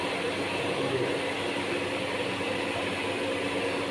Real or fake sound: fake